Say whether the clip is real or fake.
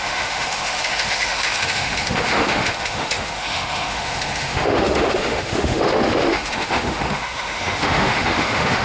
fake